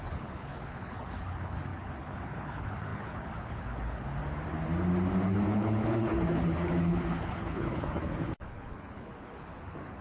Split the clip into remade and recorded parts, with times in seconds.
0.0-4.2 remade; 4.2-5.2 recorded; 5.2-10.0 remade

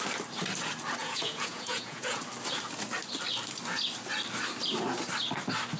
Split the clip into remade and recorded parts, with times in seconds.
0.0-1.0 recorded; 1.0-2.2 remade; 2.2-5.8 recorded

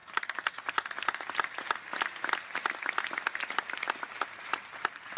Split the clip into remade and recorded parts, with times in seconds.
0.0-5.2 recorded